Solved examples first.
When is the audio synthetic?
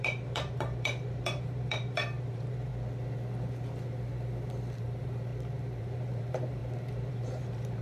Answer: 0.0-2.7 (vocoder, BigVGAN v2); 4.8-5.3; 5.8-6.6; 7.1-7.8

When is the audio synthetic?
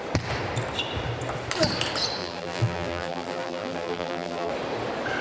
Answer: 2.2-4.5 (vocoder, BigVGAN v2)